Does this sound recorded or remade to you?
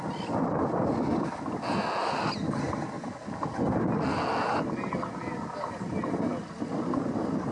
recorded